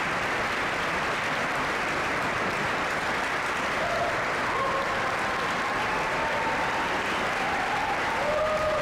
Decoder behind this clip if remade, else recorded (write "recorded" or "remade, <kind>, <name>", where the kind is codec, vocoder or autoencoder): recorded